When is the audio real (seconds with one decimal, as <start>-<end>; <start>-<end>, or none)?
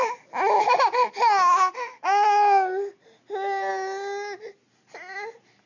0.0-5.7